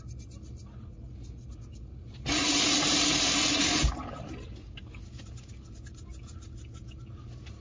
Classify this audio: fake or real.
real